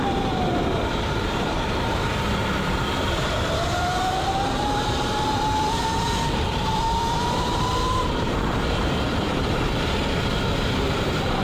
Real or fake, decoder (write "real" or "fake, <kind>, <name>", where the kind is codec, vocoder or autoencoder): fake, vocoder, BigVGAN v2